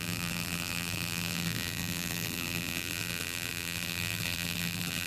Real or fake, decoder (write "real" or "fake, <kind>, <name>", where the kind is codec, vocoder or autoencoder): fake, vocoder, BigVGAN v2